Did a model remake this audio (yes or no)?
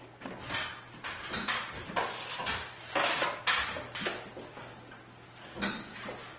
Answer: no